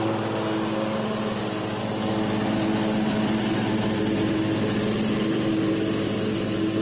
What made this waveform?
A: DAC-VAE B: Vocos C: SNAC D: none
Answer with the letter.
D